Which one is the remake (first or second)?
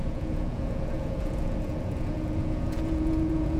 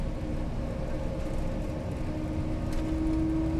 first